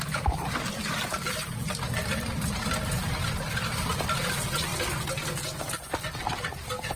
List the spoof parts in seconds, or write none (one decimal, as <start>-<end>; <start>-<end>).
0.0-3.2; 3.8-4.7; 6.2-7.0